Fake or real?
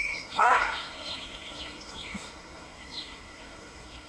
fake